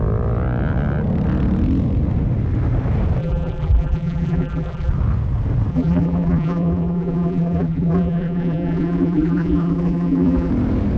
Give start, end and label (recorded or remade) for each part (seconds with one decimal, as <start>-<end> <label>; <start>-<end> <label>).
0.0-3.2 recorded; 3.2-4.9 remade; 4.9-5.7 recorded; 5.7-10.5 remade; 10.5-11.0 recorded